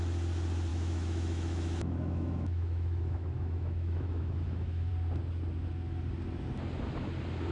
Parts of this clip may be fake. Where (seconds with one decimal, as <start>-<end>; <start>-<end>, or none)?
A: 0.7-4.9